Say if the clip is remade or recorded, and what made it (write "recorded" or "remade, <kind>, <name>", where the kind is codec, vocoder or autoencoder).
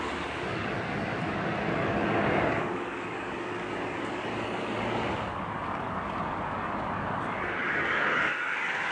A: remade, codec, DAC